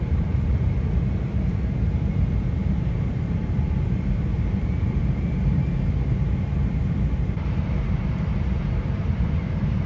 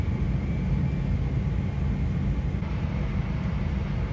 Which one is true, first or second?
second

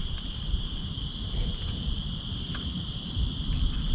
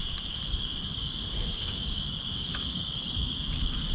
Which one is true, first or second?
first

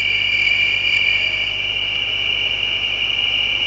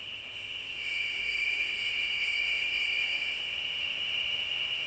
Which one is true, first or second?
first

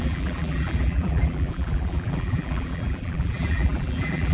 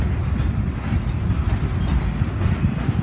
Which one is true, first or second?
second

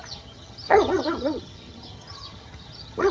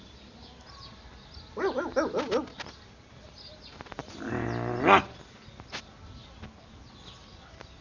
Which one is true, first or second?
second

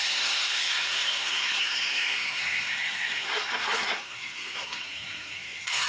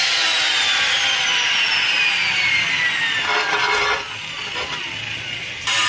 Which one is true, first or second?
second